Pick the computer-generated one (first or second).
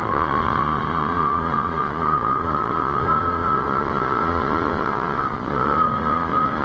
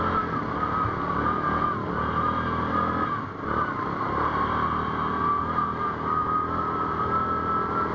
first